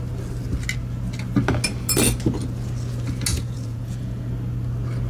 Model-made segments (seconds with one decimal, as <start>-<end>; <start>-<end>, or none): 3.3-4.3